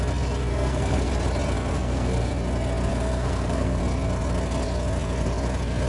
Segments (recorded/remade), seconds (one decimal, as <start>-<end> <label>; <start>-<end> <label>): 0.0-0.5 recorded; 0.5-1.1 remade; 1.1-1.7 recorded; 1.7-2.3 remade; 2.3-2.9 recorded; 2.9-3.8 remade; 3.8-5.9 recorded